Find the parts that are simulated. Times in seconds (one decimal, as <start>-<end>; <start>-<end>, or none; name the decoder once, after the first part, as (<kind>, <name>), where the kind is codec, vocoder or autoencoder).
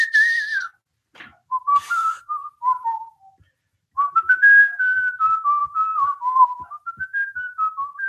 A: 1.7-2.3 (codec, SNAC)